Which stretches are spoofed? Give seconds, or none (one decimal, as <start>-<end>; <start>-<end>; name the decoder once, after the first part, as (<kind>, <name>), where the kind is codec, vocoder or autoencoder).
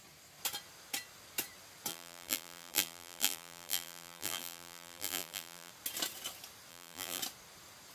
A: 1.9-5.7 (vocoder, BigVGAN v2); 6.7-7.2